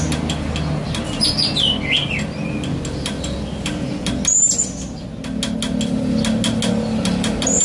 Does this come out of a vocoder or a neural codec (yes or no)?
no